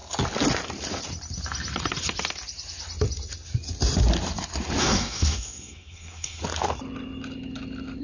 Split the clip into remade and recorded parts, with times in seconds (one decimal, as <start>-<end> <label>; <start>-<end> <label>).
0.0-4.8 recorded; 4.8-6.4 remade; 6.4-8.0 recorded